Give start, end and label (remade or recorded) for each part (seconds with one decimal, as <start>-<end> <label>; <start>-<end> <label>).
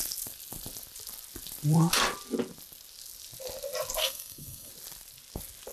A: 0.0-4.0 recorded; 4.0-4.7 remade; 4.7-5.7 recorded